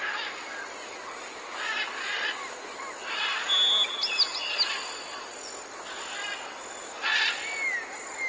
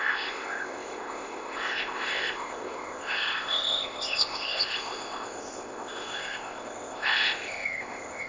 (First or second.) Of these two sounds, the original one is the first